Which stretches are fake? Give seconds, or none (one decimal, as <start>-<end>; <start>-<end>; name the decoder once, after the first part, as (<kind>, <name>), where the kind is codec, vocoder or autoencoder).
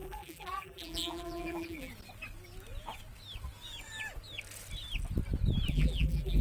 0.0-1.9 (vocoder, BigVGAN v2); 5.7-6.4